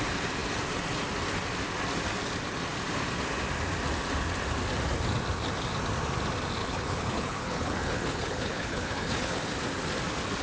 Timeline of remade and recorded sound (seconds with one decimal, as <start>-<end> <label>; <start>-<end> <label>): 0.0-6.6 recorded; 6.6-9.4 remade; 9.4-10.4 recorded